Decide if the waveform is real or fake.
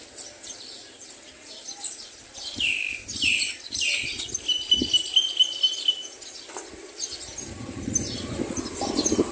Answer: real